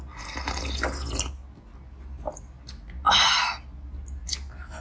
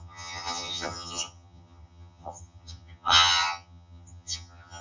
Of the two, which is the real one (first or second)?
first